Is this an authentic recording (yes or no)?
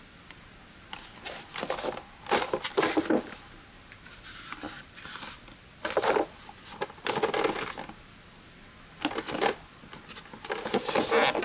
yes